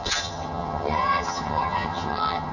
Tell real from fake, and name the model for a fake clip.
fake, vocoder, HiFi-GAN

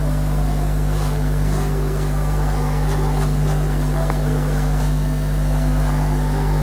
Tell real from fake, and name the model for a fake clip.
fake, codec, SNAC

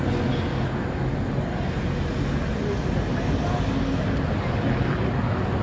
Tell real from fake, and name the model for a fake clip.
real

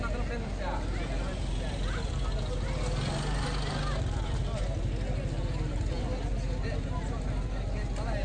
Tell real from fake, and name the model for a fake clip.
real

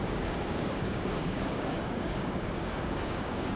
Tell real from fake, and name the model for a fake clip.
fake, codec, DAC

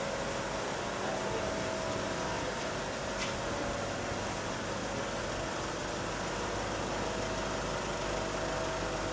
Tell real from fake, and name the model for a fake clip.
real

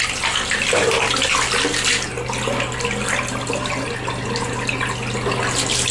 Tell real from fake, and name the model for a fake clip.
real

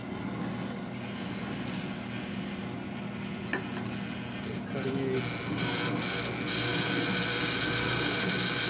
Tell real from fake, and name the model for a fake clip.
real